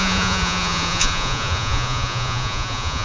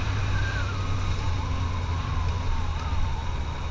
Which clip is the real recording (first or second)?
second